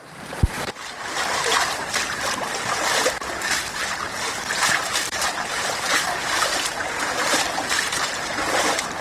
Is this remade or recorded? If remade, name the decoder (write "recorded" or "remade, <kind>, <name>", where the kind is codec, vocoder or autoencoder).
remade, vocoder, BigVGAN v2